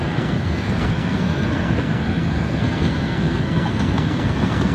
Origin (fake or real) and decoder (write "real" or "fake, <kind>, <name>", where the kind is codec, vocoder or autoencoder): fake, codec, SNAC